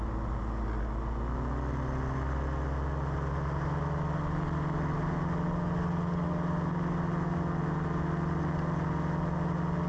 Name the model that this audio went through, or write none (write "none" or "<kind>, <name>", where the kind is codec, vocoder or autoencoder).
none